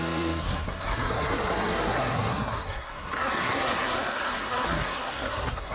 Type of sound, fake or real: fake